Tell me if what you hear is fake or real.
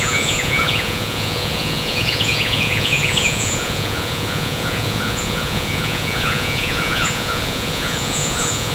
fake